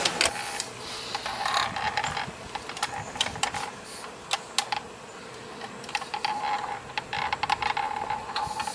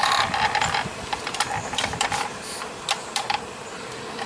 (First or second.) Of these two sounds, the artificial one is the second